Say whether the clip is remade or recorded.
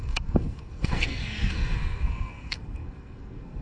remade